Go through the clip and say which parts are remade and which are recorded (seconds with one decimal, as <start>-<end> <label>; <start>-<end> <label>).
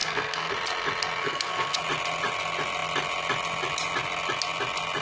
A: 0.0-0.5 remade; 0.5-1.2 recorded; 1.2-1.8 remade; 1.8-5.0 recorded